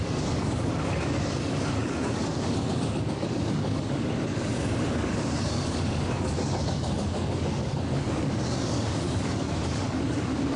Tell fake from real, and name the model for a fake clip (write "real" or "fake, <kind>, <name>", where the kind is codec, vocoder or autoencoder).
fake, codec, DAC